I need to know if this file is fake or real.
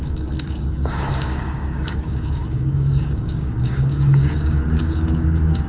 fake